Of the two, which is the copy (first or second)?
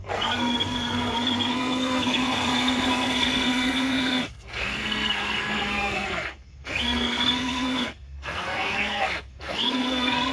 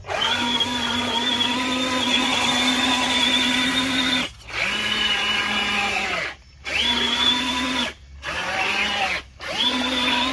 first